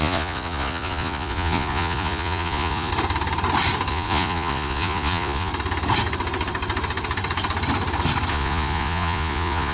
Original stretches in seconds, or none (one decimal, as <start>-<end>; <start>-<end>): 2.9-3.9; 5.5-8.3